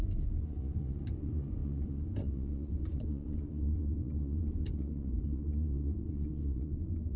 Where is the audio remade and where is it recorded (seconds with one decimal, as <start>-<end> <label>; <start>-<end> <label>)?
0.0-7.2 remade